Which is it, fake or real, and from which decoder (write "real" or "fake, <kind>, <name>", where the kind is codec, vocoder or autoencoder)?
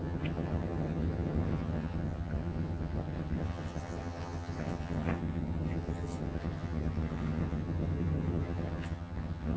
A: fake, vocoder, HiFi-GAN